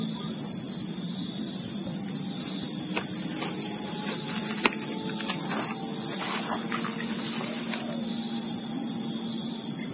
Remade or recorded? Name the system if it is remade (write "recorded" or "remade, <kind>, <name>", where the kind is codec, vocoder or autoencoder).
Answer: recorded